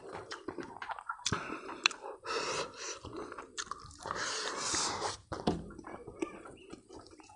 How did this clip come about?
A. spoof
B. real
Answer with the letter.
A